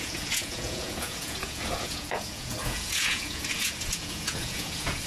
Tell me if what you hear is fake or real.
fake